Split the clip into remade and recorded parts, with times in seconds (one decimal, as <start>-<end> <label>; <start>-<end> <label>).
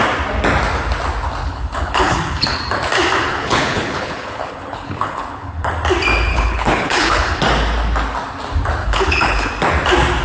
0.0-1.4 recorded; 1.4-2.6 remade; 2.6-3.3 recorded; 3.3-5.7 remade; 5.7-6.3 recorded; 6.3-7.4 remade; 7.4-8.8 recorded; 8.8-9.5 remade; 9.5-10.2 recorded